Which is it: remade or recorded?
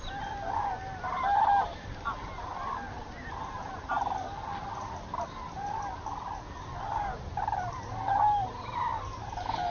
recorded